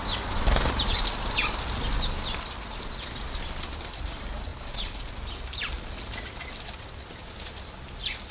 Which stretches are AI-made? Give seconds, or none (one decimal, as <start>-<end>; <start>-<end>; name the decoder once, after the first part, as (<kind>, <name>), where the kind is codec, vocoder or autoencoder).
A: none